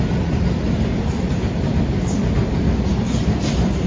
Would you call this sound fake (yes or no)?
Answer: no